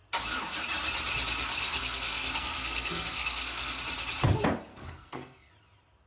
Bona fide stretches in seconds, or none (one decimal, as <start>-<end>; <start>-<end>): 0.0-1.5; 3.8-4.7; 5.5-6.1